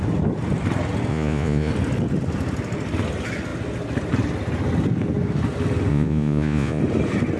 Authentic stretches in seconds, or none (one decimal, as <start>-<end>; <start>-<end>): 0.0-1.1; 1.7-5.9; 6.8-7.4

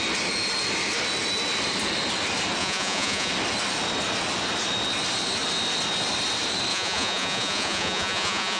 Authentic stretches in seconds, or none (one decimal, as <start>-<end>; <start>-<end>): 0.0-2.6; 3.3-6.7

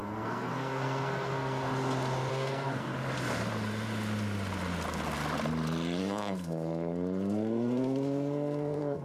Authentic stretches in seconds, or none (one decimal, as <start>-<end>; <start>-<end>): 1.7-2.3; 2.9-6.0

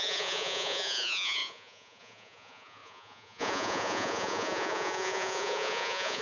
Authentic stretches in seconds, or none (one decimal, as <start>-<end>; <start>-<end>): none

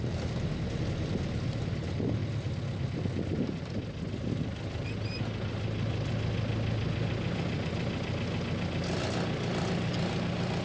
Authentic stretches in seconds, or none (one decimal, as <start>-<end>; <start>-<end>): 0.0-10.6

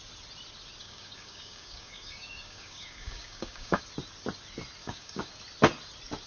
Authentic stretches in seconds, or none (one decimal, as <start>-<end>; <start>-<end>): 0.0-0.8; 3.8-4.8; 5.3-6.3